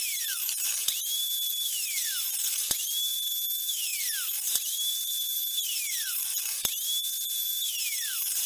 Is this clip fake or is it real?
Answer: fake